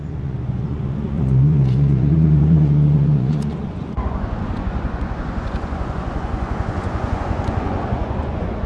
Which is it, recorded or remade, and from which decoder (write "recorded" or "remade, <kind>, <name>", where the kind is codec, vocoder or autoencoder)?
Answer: remade, vocoder, Vocos